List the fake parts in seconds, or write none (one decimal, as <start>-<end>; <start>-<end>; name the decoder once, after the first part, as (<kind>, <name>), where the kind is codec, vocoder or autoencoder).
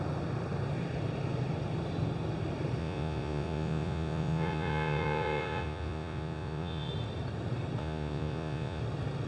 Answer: 2.8-6.9 (vocoder, Vocos); 7.8-8.8